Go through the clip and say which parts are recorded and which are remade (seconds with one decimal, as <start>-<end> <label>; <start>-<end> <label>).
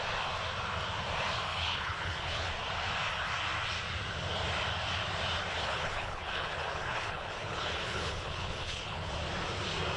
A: 0.0-1.5 recorded; 1.5-2.5 remade; 2.5-5.5 recorded; 5.5-9.1 remade; 9.1-10.0 recorded